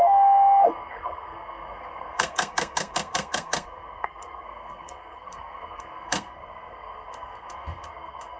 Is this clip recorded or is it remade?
remade